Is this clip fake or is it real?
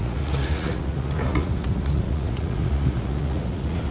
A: fake